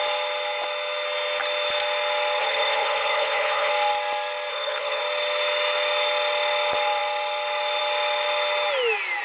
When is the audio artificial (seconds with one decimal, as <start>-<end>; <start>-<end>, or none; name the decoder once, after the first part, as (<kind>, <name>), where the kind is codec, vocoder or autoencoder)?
2.4-3.7 (codec, HILCodec); 4.5-5.0